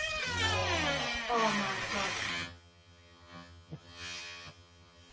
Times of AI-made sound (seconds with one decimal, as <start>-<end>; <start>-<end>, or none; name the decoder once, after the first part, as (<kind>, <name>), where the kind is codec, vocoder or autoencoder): 2.3-5.1 (vocoder, HiFi-GAN)